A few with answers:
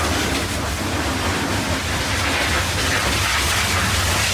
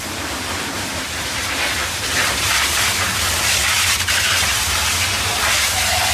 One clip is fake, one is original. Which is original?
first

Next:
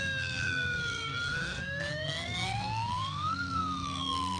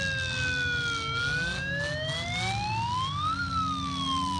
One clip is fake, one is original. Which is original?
second